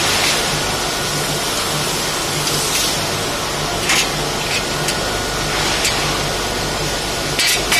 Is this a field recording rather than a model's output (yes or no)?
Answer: yes